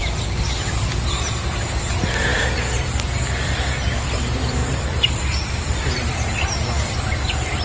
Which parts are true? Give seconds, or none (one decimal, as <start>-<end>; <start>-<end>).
0.0-4.6; 6.6-7.6